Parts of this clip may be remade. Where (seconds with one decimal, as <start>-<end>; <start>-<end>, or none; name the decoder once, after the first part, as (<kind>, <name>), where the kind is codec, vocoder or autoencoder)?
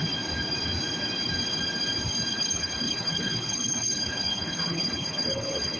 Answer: 2.3-5.8 (codec, HILCodec)